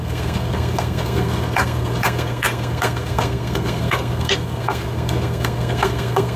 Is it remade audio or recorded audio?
remade